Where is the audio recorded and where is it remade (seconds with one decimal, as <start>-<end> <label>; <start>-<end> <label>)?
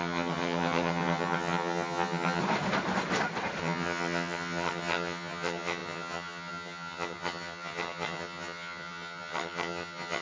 0.0-2.4 remade; 2.4-3.6 recorded; 3.6-10.2 remade